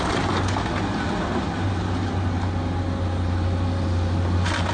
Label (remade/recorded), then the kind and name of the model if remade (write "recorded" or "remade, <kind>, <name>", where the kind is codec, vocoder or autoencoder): recorded